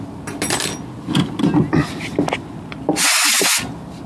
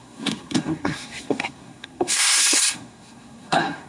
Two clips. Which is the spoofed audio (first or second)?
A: second